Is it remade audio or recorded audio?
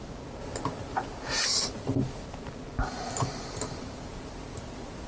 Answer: recorded